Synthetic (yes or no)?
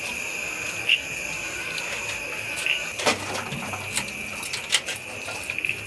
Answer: no